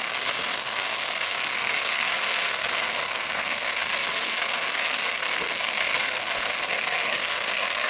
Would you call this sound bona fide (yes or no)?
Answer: no